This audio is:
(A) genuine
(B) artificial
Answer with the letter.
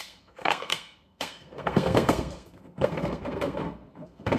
B